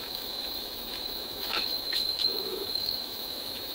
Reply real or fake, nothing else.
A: fake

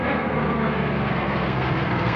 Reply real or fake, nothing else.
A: fake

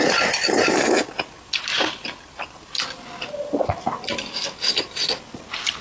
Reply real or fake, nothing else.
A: real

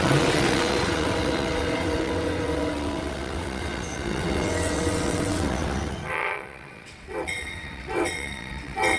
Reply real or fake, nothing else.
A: fake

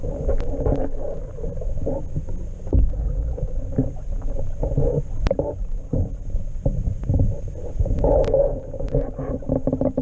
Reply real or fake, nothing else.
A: real